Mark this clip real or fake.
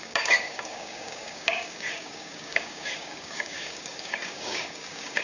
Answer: fake